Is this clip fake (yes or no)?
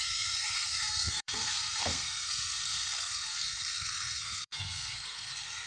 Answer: yes